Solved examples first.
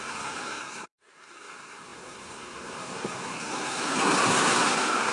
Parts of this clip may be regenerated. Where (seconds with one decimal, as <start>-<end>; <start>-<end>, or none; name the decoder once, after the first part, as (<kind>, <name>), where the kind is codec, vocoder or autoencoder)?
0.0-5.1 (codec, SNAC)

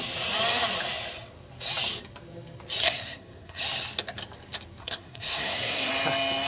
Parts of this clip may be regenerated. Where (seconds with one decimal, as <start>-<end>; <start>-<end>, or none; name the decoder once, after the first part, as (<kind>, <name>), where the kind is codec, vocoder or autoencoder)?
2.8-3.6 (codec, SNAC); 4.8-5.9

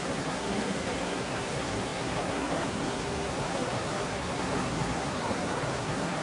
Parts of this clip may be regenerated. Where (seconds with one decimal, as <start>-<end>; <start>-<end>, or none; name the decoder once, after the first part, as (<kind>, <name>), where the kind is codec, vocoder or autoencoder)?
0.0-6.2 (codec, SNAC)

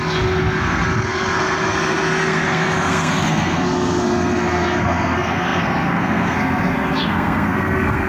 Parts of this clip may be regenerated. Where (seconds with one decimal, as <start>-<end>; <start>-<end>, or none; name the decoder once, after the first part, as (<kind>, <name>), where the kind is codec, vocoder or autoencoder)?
0.0-8.1 (codec, SNAC)